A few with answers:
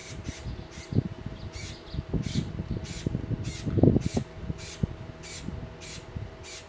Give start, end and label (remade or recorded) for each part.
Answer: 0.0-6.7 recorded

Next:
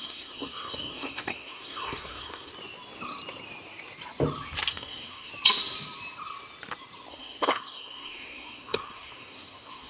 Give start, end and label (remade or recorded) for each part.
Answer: 0.0-2.5 remade; 2.5-4.7 recorded; 4.7-5.3 remade; 5.3-7.1 recorded; 7.1-9.9 remade

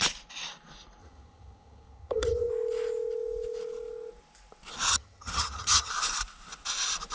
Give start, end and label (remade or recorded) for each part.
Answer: 0.0-1.0 recorded; 1.0-2.5 remade; 2.5-4.9 recorded; 4.9-5.9 remade; 5.9-7.1 recorded